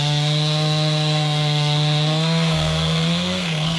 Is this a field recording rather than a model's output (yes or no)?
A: no